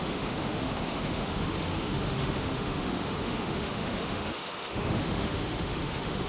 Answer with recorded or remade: remade